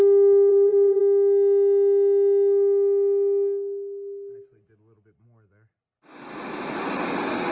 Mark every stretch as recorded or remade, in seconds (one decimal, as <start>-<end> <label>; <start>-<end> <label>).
0.0-0.5 recorded; 0.5-1.0 remade; 1.0-7.5 recorded